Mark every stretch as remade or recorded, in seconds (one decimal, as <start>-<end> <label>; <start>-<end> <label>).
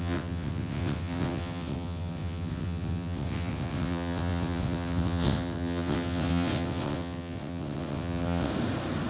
0.0-8.5 remade; 8.5-9.1 recorded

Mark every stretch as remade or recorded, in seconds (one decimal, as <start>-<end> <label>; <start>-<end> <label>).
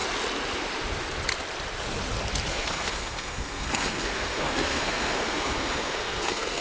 0.0-2.5 recorded; 2.5-6.6 remade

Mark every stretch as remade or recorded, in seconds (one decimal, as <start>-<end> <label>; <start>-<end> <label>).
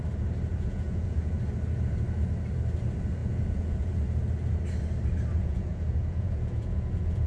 0.0-0.5 recorded; 0.5-1.4 remade; 1.4-3.2 recorded; 3.2-3.9 remade; 3.9-5.4 recorded; 5.4-7.3 remade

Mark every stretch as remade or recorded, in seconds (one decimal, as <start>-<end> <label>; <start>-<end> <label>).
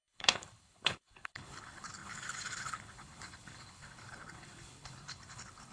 0.0-5.7 remade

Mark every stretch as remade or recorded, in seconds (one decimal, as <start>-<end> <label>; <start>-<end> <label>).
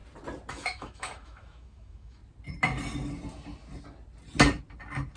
0.0-0.5 recorded; 0.5-2.2 remade; 2.2-5.2 recorded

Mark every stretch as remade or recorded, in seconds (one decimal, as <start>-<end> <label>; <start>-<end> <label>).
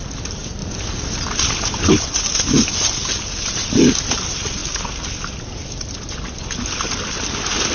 0.0-7.7 recorded